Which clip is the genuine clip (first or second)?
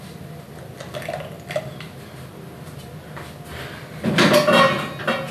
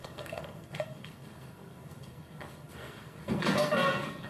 first